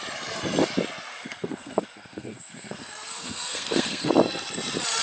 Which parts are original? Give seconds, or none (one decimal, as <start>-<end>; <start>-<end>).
0.0-1.1; 4.1-5.0